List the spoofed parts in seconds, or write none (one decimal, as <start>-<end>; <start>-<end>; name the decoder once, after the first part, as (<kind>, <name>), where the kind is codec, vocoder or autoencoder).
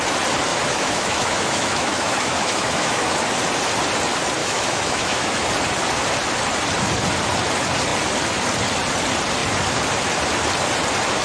0.5-3.1 (autoencoder, DAC-VAE); 4.4-5.5